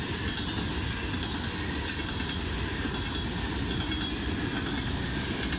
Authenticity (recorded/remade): recorded